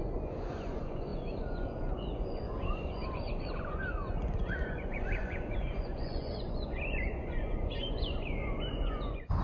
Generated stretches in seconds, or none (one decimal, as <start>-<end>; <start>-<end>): 0.0-9.4